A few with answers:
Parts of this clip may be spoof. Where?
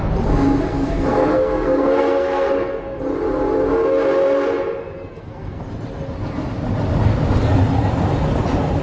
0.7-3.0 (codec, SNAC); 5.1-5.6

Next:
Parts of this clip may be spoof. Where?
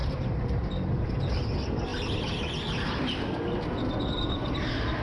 0.0-1.1 (vocoder, BigVGAN v2)